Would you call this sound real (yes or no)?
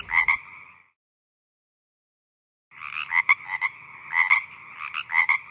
yes